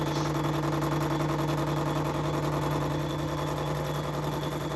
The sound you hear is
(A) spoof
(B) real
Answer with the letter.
B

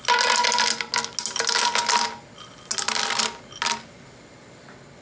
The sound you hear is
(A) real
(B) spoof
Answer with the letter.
A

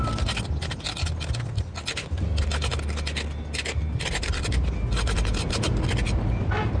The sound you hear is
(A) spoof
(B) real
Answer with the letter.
B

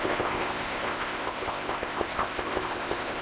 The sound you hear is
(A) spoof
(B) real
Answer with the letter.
A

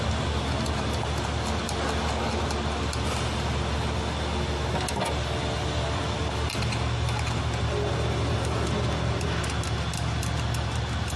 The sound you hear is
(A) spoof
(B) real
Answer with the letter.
B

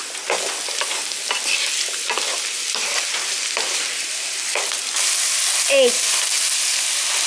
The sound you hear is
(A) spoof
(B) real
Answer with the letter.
B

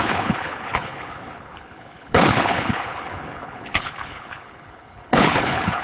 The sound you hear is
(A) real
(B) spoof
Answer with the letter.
B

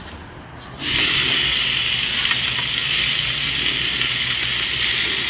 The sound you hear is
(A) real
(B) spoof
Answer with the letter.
A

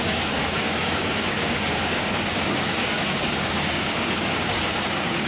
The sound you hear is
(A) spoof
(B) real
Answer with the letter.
A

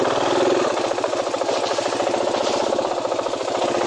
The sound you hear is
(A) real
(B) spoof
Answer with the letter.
A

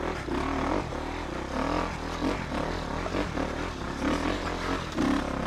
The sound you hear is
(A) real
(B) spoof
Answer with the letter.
A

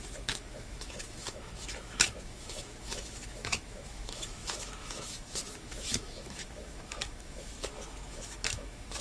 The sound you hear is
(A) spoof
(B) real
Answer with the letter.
A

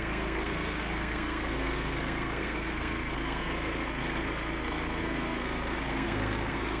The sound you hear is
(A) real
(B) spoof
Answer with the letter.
B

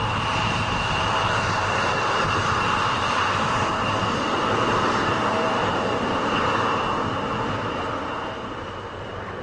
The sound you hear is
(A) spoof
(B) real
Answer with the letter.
B